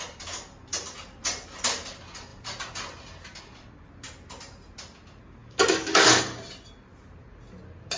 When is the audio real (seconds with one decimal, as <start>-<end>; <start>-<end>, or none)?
0.0-5.4; 6.2-8.0